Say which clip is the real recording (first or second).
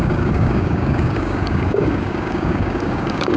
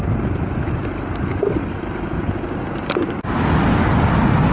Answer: second